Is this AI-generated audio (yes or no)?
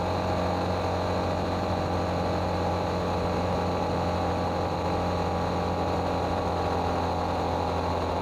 no